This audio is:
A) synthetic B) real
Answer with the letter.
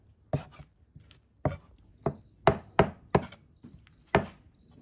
B